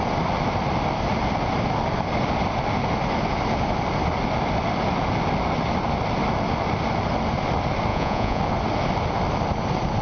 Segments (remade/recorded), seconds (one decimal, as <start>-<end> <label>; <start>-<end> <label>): 0.0-7.9 recorded; 7.9-8.4 remade; 8.4-10.0 recorded